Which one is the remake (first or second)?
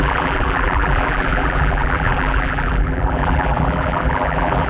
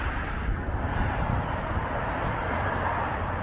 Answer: first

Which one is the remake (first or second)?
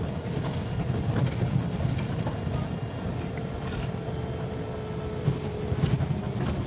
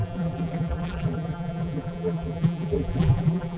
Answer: second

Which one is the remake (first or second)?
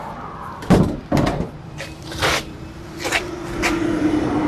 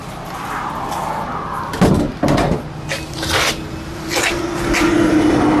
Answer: first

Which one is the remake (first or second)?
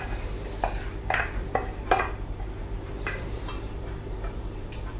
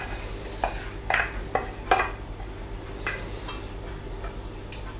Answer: first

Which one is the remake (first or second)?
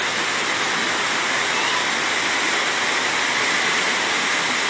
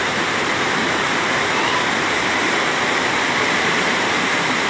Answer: second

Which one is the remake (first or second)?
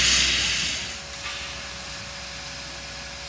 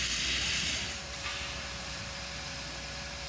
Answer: second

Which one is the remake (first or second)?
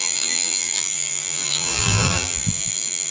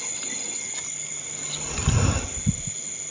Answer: first